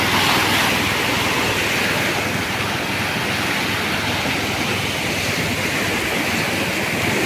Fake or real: real